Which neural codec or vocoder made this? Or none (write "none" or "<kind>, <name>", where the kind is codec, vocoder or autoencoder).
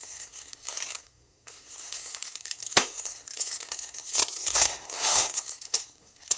codec, SNAC